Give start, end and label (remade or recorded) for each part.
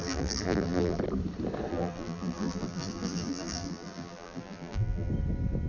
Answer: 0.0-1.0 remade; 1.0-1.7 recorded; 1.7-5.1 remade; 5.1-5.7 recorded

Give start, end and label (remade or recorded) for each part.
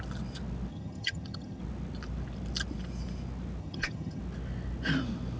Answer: 0.0-0.7 recorded; 0.7-1.6 remade; 1.6-3.6 recorded; 3.6-4.2 remade; 4.2-5.4 recorded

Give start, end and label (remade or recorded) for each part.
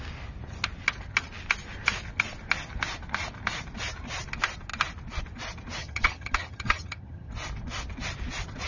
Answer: 0.0-5.8 recorded; 5.8-7.3 remade; 7.3-8.7 recorded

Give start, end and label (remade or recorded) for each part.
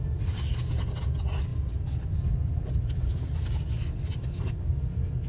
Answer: 0.0-5.3 recorded